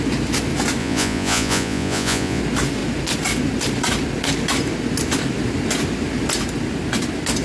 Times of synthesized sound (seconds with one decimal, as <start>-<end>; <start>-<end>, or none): 0.8-2.4